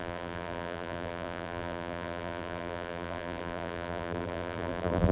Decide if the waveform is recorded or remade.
remade